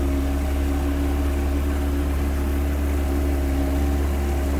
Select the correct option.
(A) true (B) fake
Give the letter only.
A